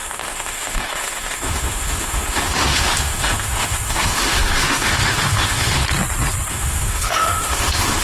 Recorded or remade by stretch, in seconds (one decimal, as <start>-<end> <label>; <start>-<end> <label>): 0.0-5.8 remade; 5.8-6.5 recorded; 6.5-8.0 remade